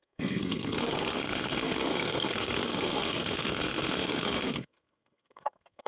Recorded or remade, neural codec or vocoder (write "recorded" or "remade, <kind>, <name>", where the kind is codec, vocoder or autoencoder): remade, codec, SNAC